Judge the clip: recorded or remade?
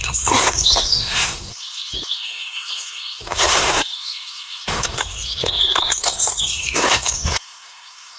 remade